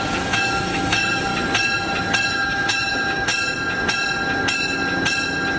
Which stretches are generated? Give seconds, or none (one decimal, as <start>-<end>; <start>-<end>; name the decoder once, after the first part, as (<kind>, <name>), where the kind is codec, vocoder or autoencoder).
0.0-1.3 (autoencoder, DAC-VAE); 2.3-3.3